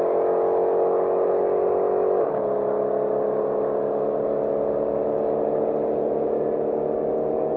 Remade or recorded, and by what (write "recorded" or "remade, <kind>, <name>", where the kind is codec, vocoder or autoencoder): recorded